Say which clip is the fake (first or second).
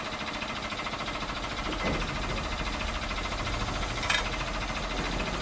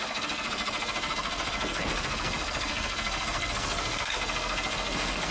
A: second